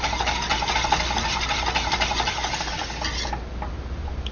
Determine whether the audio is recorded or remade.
recorded